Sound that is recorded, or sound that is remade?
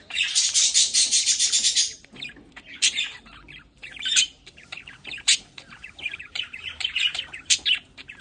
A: remade